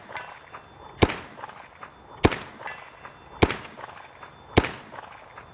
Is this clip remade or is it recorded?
recorded